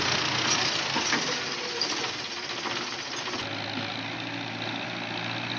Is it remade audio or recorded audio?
recorded